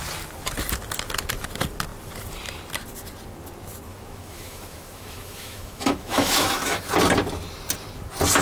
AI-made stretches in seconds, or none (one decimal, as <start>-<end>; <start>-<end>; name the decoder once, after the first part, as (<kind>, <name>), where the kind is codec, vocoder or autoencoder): 3.9-6.9 (autoencoder, DAC-VAE)